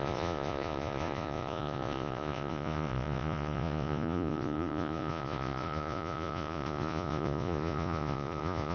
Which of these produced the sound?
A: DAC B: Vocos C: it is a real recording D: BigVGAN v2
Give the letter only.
B